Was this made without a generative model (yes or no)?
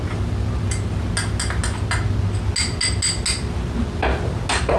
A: yes